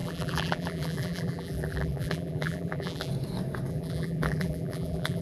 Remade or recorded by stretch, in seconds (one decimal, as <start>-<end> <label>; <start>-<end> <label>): 0.0-3.1 remade; 3.1-3.7 recorded; 3.7-5.2 remade